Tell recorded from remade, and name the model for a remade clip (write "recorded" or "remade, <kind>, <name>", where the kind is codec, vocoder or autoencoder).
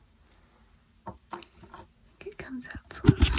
recorded